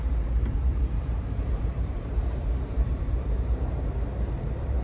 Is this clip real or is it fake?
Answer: fake